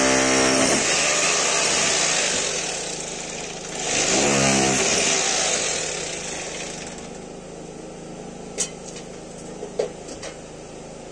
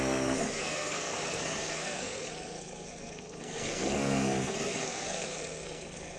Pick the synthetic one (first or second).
second